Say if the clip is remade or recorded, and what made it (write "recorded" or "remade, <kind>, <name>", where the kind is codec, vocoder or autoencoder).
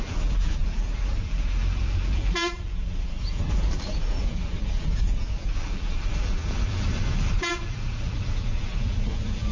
remade, vocoder, BigVGAN v2